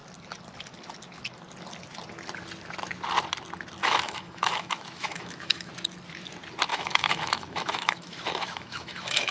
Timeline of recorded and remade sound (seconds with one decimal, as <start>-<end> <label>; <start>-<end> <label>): 0.0-3.8 recorded; 3.8-5.7 remade; 5.7-6.7 recorded; 6.7-9.3 remade